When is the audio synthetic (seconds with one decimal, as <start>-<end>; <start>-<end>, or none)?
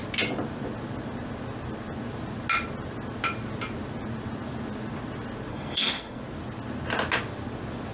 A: 5.5-6.2